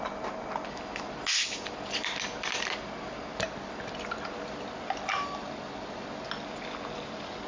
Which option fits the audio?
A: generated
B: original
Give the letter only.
B